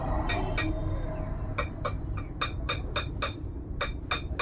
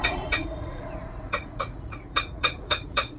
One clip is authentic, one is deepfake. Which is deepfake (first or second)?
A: second